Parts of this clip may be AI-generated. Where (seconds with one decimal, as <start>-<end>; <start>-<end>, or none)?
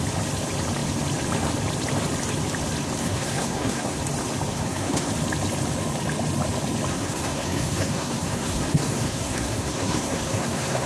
3.0-4.0; 4.5-5.1; 6.9-10.9